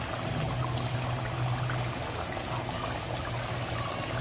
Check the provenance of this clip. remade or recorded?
recorded